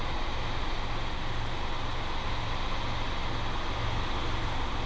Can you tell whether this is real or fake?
real